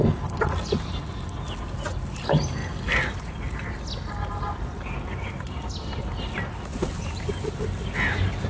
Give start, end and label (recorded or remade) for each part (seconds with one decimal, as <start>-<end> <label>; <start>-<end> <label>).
0.0-8.5 recorded